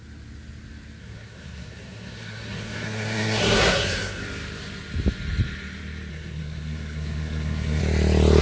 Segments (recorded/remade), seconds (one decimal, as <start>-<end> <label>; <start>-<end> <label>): 0.0-1.0 recorded; 1.0-4.2 remade; 4.2-6.1 recorded; 6.1-7.8 remade; 7.8-8.4 recorded